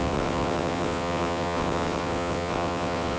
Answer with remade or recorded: remade